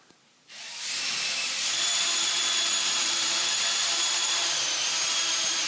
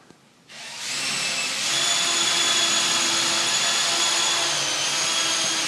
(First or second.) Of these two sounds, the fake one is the first